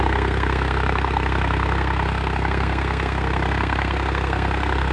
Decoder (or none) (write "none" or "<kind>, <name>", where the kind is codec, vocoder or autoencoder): codec, SNAC